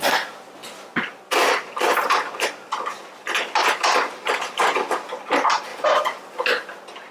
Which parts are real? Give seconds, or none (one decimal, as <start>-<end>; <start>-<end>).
0.0-3.6; 4.3-7.1